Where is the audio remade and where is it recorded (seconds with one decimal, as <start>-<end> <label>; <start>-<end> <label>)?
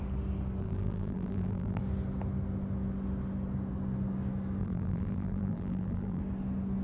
0.0-0.6 recorded; 0.6-1.8 remade; 1.8-4.6 recorded; 4.6-6.2 remade; 6.2-6.8 recorded